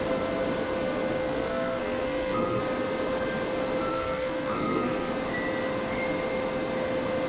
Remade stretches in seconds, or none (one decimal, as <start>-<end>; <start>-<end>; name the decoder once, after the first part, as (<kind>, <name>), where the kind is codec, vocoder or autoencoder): 1.2-2.6 (codec, SNAC); 3.9-5.1